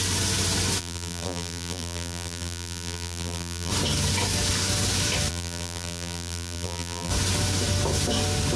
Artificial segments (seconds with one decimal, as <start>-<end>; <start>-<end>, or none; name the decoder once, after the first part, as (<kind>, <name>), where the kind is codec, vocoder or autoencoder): 0.8-3.7 (vocoder, BigVGAN v2); 5.3-7.1